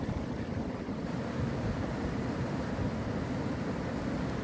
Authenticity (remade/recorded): recorded